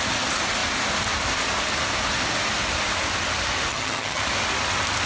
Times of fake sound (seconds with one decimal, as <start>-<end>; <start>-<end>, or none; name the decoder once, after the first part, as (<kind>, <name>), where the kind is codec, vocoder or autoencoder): 3.7-4.2 (vocoder, HiFi-GAN)